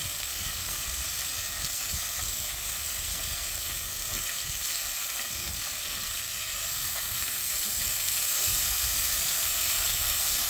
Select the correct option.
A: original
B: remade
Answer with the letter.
B